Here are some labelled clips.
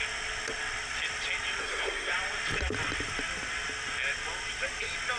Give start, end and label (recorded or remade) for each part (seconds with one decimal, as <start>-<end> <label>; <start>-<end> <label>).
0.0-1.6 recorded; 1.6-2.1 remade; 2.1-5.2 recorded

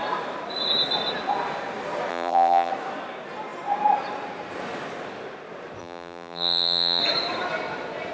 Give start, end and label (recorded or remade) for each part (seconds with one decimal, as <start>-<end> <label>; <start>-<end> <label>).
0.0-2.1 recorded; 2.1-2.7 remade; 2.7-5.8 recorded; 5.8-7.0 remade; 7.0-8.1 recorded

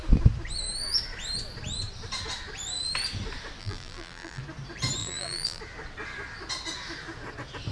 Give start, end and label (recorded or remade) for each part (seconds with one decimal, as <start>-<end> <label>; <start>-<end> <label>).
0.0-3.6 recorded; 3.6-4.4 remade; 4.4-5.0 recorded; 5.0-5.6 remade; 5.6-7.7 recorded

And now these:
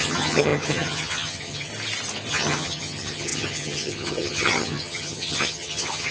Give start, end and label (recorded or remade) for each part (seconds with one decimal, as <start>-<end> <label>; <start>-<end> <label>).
0.0-1.7 remade; 1.7-2.3 recorded; 2.3-6.1 remade

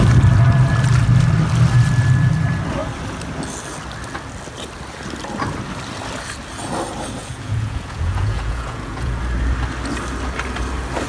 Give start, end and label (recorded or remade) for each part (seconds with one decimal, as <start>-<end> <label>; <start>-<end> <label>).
0.0-7.2 recorded; 7.2-9.2 remade; 9.2-11.1 recorded

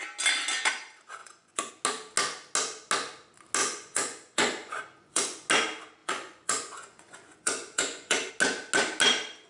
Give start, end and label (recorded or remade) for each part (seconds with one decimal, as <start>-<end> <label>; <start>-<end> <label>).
0.0-1.2 recorded; 1.2-1.7 remade; 1.7-3.6 recorded; 3.6-5.5 remade; 5.5-6.0 recorded; 6.0-8.3 remade; 8.3-9.5 recorded

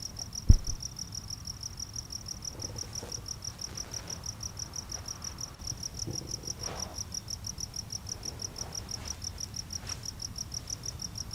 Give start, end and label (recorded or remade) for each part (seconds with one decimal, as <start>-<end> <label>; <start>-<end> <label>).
0.0-6.9 recorded; 6.9-7.5 remade; 7.5-11.3 recorded

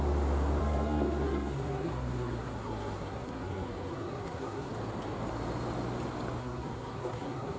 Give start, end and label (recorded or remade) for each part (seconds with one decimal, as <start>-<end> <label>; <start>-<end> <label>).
0.0-0.6 recorded; 0.6-4.7 remade; 4.7-6.4 recorded; 6.4-7.6 remade